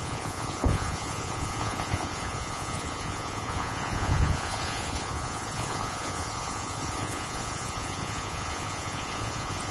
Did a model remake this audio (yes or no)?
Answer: yes